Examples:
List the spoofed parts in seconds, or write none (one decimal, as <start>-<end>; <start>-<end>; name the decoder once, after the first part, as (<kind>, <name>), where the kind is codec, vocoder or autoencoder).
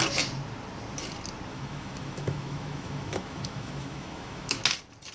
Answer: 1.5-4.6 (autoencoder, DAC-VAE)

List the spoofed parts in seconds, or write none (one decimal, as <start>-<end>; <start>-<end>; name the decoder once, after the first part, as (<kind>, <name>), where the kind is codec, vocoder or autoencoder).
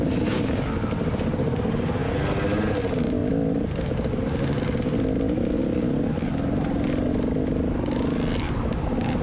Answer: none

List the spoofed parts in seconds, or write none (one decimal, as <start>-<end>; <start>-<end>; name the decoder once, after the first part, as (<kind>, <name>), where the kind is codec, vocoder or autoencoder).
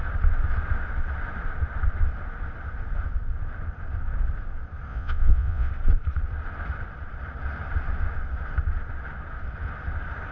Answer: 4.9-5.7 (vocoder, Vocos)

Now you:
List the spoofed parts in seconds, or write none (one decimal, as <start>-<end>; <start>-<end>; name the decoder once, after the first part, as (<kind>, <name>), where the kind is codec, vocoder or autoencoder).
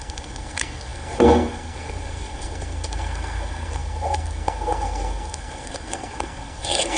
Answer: 0.0-7.0 (codec, SNAC)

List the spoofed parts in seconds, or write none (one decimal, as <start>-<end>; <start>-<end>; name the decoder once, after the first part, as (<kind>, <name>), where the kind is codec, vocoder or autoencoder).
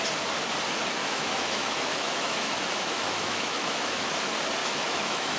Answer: 1.0-4.1 (autoencoder, DAC-VAE); 4.6-5.4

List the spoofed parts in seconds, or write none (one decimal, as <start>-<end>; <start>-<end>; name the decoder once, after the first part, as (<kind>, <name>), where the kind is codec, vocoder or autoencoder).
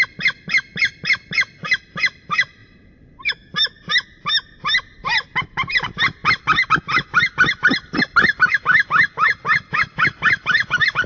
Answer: 2.6-3.3 (vocoder, BigVGAN v2)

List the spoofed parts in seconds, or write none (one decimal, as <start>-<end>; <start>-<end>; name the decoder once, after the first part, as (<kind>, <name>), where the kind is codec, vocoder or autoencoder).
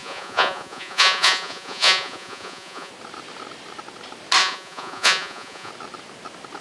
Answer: 0.0-2.9 (vocoder, Vocos); 4.4-5.7